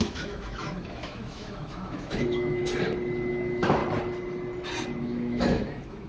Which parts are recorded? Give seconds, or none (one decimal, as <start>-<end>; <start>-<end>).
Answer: 2.6-3.3; 3.8-5.0